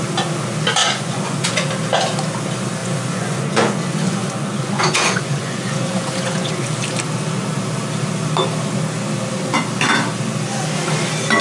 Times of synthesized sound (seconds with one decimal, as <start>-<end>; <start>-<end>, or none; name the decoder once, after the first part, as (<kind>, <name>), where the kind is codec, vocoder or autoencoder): 0.8-1.7 (vocoder, Vocos); 2.8-6.5